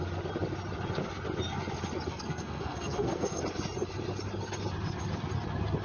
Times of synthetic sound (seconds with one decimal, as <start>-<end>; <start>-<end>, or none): 2.1-3.4